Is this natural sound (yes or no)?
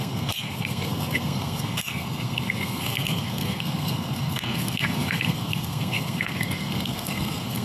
no